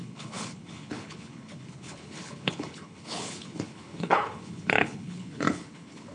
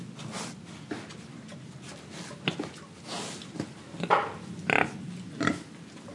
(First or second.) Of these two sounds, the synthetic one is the first